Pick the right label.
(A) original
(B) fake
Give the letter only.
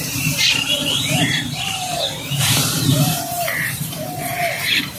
B